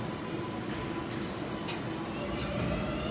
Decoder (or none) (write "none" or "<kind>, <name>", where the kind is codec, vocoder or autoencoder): vocoder, BigVGAN v2